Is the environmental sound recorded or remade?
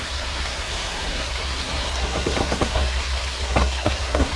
remade